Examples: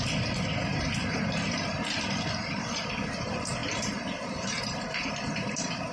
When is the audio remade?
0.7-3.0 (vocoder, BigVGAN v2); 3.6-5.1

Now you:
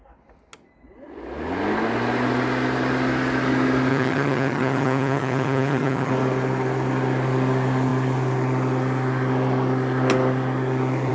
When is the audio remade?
3.9-6.1 (vocoder, HiFi-GAN)

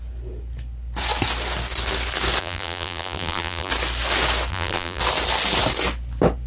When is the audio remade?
2.4-3.7 (vocoder, BigVGAN v2); 4.5-5.0

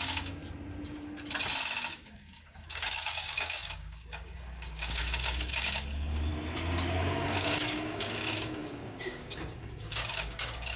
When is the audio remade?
0.0-0.4 (codec, DAC); 1.9-6.3; 7.0-10.8

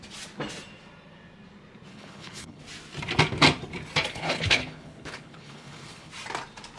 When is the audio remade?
1.9-2.6 (codec, HILCodec); 4.1-6.1